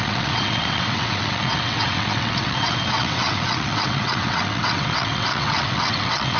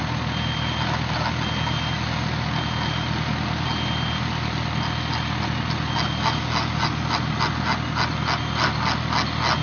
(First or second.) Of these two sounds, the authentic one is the second